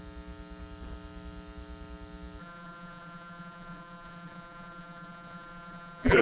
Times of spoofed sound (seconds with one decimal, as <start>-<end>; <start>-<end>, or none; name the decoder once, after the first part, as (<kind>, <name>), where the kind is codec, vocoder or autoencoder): 2.4-6.2 (vocoder, BigVGAN v2)